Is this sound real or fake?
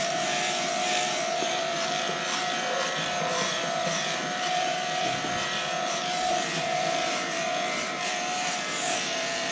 fake